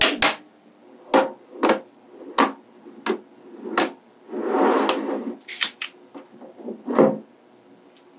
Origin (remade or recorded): recorded